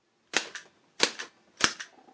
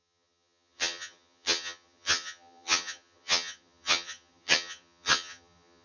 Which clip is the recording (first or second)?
first